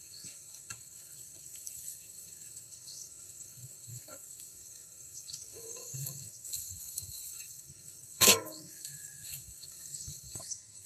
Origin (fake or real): fake